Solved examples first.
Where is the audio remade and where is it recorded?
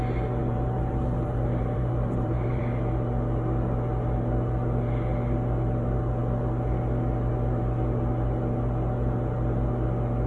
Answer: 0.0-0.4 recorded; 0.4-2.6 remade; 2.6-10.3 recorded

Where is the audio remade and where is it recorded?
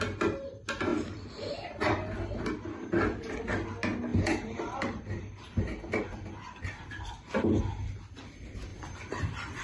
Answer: 0.0-0.9 recorded; 0.9-2.4 remade; 2.4-4.1 recorded; 4.1-7.4 remade; 7.4-8.7 recorded; 8.7-9.6 remade